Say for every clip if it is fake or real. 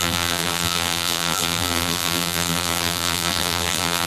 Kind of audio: fake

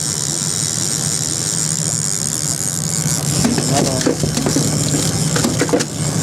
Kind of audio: real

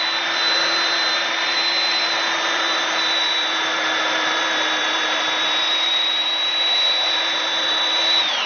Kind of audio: fake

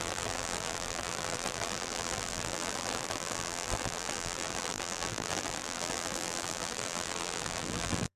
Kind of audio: fake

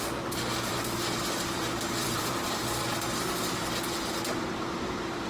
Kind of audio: fake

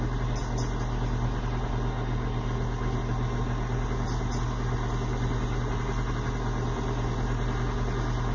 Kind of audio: real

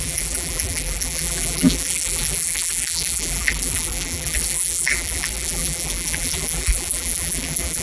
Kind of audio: fake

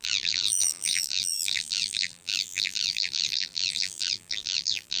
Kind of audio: fake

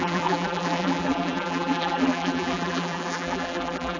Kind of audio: fake